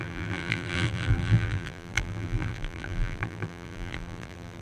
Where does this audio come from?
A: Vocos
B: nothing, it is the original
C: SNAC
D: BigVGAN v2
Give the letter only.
D